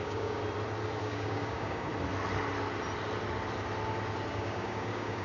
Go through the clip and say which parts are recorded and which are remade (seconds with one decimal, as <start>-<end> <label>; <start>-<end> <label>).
0.0-0.4 remade; 0.4-1.0 recorded; 1.0-1.9 remade; 1.9-4.3 recorded; 4.3-5.2 remade